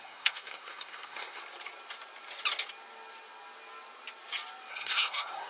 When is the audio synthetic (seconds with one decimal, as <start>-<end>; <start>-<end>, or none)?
0.0-1.4; 4.7-5.5